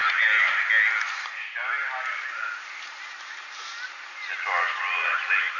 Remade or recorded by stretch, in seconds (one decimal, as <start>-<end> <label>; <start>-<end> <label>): 0.0-5.6 recorded